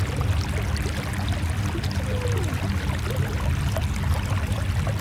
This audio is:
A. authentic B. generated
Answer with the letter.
A